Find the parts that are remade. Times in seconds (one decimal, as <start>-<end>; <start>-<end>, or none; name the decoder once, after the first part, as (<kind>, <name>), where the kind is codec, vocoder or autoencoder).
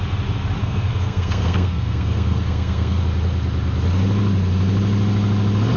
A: 0.6-3.0 (codec, SNAC)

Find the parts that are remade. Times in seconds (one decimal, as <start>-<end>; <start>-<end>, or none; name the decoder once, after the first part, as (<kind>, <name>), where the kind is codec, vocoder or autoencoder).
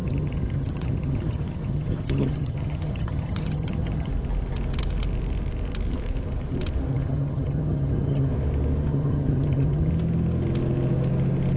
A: 0.0-4.1 (vocoder, HiFi-GAN); 6.9-8.3; 8.9-9.9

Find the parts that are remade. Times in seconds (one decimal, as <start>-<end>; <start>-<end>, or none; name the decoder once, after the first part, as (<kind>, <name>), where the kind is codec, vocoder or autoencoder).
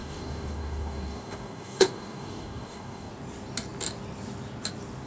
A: 0.0-3.1 (codec, DAC)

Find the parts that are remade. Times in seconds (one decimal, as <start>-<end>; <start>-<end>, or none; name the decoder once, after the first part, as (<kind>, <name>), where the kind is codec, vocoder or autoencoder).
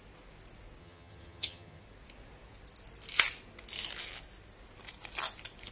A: 0.8-1.8 (vocoder, HiFi-GAN)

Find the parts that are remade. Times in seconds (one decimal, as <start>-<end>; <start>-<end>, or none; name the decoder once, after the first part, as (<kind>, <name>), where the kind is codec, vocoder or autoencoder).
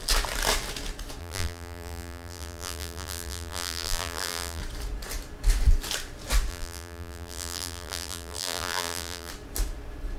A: 1.2-4.6 (vocoder, BigVGAN v2); 6.5-9.3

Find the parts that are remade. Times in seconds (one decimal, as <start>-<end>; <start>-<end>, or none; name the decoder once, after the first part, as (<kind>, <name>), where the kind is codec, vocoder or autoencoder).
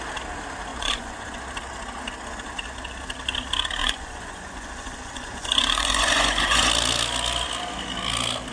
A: 0.7-1.4 (vocoder, Vocos); 3.8-6.7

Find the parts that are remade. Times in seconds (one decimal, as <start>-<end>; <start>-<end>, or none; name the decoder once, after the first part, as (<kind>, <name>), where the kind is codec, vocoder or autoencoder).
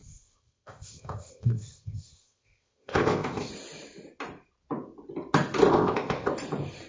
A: 0.0-3.5 (codec, ZipCodec); 5.7-6.3